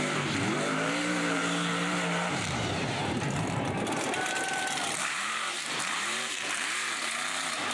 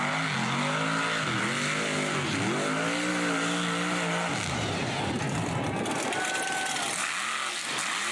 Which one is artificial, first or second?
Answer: first